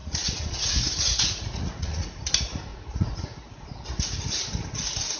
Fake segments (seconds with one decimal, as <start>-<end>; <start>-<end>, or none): 0.0-2.3; 2.7-3.5